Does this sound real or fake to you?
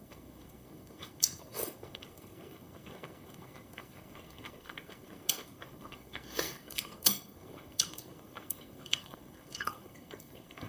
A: fake